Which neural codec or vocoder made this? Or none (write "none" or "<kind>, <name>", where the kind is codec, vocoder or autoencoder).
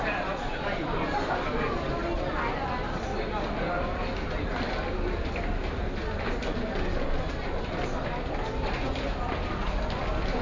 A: none